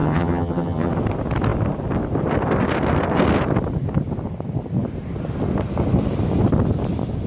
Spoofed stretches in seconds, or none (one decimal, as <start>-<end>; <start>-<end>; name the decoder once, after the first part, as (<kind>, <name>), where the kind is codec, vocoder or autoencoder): 0.0-0.9 (vocoder, HiFi-GAN)